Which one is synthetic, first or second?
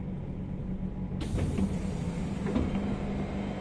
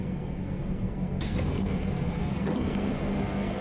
second